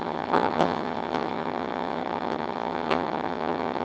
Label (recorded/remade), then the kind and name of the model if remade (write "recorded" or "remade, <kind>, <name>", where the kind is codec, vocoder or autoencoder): remade, vocoder, HiFi-GAN